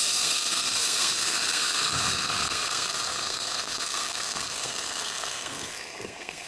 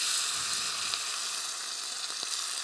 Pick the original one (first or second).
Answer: second